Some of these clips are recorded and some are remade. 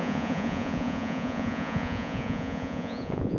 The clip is remade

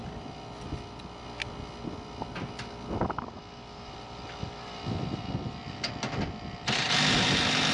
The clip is recorded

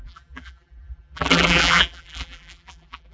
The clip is remade